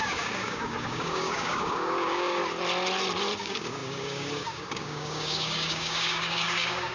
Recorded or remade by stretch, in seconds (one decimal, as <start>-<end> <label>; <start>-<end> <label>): 0.0-2.4 remade; 2.4-3.4 recorded; 3.4-6.9 remade